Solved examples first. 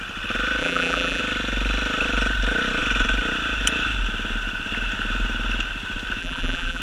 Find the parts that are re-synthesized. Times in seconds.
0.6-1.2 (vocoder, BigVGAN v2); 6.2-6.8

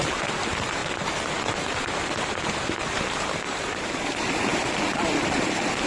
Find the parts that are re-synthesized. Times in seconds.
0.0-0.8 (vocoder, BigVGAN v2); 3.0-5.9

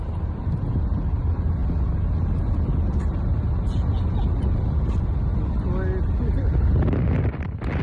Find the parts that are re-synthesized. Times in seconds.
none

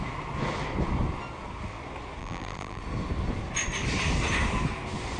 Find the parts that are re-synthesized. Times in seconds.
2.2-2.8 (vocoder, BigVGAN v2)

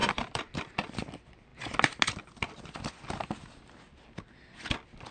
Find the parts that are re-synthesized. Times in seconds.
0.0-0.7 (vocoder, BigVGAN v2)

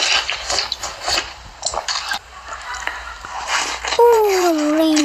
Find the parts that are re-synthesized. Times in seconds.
0.0-5.0 (vocoder, BigVGAN v2)

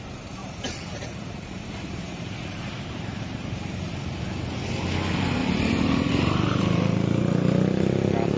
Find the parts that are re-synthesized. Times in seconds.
0.4-3.9 (vocoder, BigVGAN v2); 5.4-7.2